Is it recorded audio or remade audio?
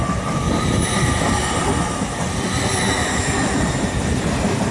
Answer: remade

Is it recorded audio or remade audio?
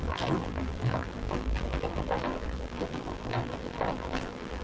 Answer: remade